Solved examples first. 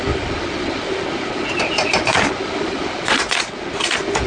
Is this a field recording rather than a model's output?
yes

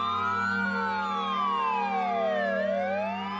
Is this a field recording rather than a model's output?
yes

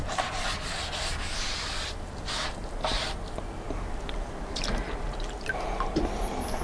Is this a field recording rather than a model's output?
yes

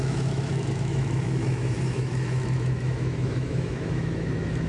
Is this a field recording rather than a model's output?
no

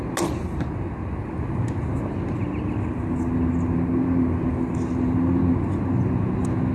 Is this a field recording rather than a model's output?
yes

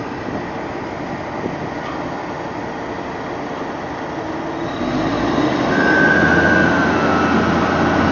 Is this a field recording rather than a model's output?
yes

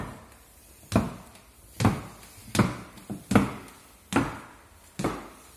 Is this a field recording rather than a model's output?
yes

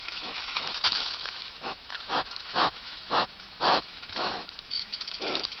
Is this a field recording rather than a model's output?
no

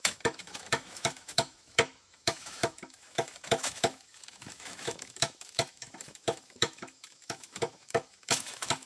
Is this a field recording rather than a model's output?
no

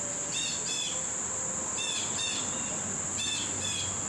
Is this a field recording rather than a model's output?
yes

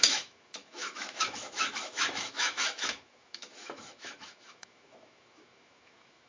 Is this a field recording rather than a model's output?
no